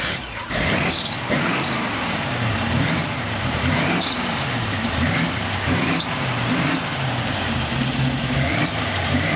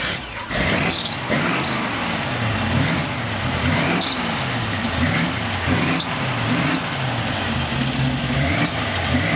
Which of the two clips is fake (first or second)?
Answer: first